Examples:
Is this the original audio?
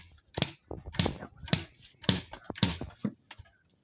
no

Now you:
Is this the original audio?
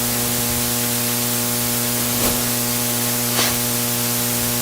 yes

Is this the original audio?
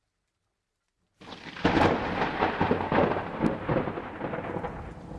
yes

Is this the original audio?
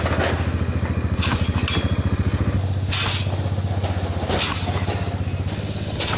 yes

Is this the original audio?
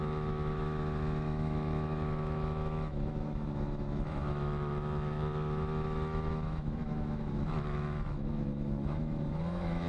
no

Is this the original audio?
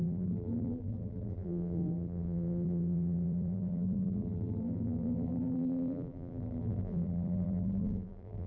no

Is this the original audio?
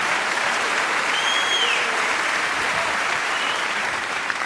no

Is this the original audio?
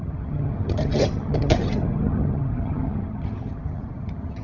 no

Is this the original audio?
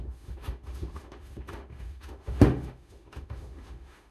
no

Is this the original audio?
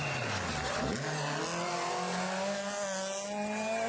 yes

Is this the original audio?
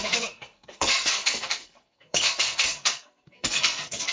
no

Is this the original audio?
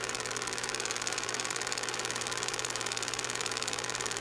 no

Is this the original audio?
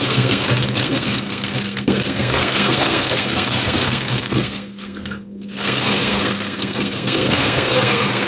no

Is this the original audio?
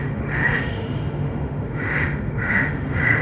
no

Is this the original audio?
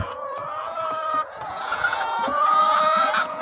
no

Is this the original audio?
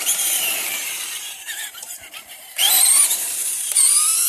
no